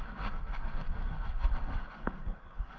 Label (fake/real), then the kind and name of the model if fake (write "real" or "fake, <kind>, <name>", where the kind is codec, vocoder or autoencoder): fake, codec, SNAC